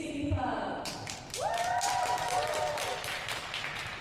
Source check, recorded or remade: remade